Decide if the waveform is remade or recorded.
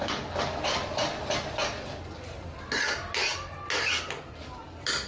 recorded